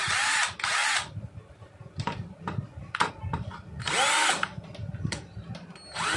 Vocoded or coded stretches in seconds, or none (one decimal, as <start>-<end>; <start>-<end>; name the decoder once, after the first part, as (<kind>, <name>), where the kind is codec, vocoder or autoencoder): 0.8-3.1 (vocoder, BigVGAN v2)